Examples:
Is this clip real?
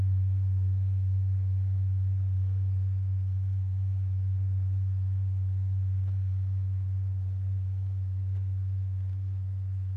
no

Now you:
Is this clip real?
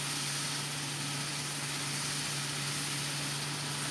yes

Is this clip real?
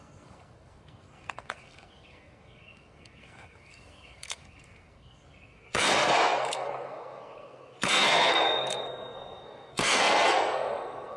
no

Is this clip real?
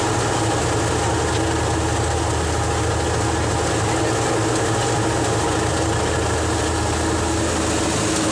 yes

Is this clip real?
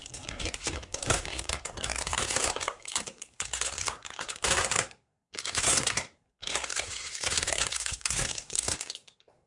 no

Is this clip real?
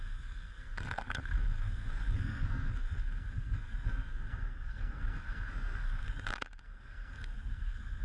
no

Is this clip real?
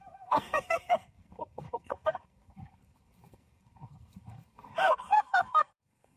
no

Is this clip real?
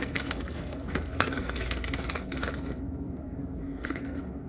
no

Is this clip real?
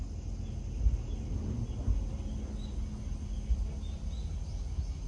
yes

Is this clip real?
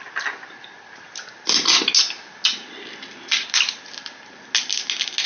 yes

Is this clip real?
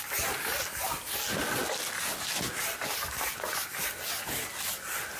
yes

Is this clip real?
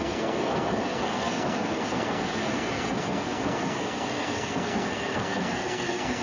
no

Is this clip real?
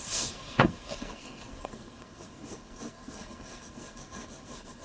no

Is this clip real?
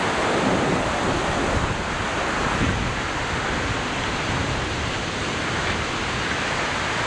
yes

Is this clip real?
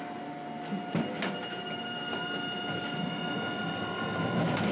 yes